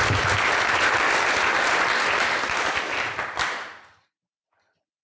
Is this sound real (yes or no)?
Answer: yes